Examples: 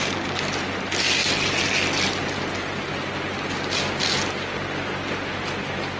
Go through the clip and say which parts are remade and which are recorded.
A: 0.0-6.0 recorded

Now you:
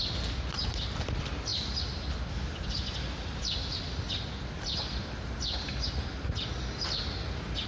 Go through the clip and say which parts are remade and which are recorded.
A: 0.0-7.7 recorded

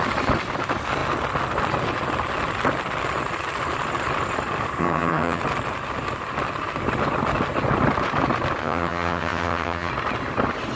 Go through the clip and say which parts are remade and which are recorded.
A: 0.0-4.8 recorded; 4.8-5.4 remade; 5.4-8.6 recorded; 8.6-9.9 remade; 9.9-10.8 recorded

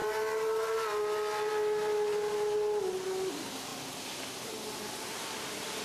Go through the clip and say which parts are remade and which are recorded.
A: 0.0-3.7 recorded; 3.7-5.8 remade